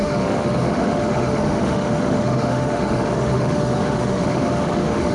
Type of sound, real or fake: fake